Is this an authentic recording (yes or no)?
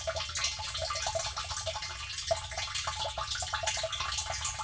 yes